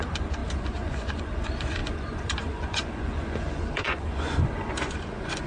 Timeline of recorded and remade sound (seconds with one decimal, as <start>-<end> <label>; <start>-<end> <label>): 0.0-5.5 remade